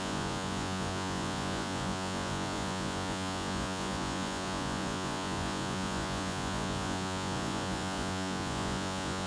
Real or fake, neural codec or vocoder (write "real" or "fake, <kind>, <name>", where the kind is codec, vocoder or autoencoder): fake, vocoder, Vocos